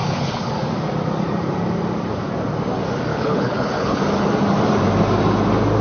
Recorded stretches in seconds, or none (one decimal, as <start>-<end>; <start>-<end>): 0.5-3.1; 4.0-5.8